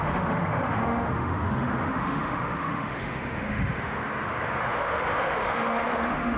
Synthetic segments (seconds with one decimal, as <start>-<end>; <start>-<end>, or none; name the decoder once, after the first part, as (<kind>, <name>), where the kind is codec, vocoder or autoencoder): 0.0-4.0 (autoencoder, DAC-VAE); 4.6-6.4